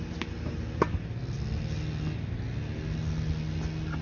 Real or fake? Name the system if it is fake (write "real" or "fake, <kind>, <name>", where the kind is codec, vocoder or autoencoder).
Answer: real